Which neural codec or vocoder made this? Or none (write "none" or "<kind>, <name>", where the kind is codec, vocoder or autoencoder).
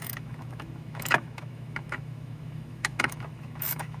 autoencoder, DAC-VAE